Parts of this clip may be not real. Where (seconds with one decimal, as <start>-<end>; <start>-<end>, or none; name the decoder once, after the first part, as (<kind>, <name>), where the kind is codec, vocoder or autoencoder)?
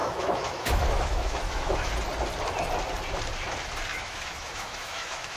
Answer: 0.0-1.9 (autoencoder, DAC-VAE); 3.9-5.4